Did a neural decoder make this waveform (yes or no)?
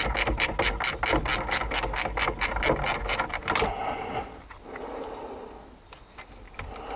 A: no